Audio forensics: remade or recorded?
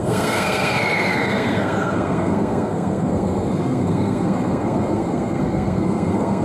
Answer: remade